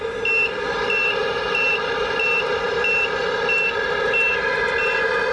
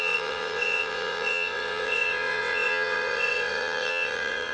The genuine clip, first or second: first